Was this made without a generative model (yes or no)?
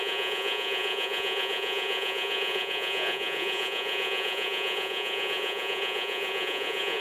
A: no